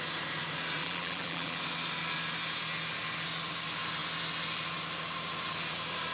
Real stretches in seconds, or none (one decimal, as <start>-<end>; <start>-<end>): 0.0-0.8; 1.6-6.1